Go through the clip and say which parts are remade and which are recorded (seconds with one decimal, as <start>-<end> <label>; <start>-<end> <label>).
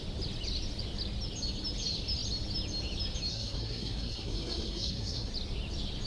0.0-3.3 recorded; 3.3-5.3 remade; 5.3-6.1 recorded